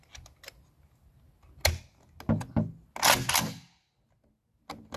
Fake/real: real